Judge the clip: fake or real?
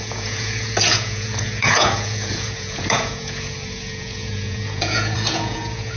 fake